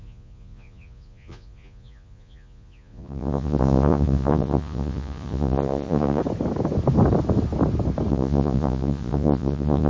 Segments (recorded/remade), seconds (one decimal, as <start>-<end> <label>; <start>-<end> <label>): 0.0-6.2 remade; 6.2-8.1 recorded; 8.1-9.9 remade